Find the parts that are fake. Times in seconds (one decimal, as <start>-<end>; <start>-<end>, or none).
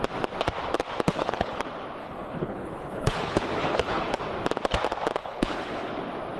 1.1-1.6; 2.0-4.2; 5.2-5.9